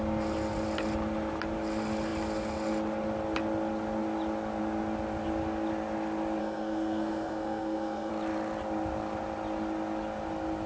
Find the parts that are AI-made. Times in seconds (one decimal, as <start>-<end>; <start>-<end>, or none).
6.4-8.1